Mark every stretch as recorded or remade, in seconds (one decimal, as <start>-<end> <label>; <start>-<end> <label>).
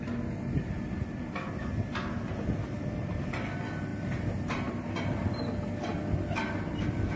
0.0-3.9 recorded; 3.9-4.8 remade; 4.8-7.2 recorded